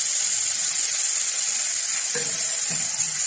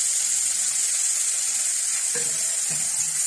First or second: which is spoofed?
first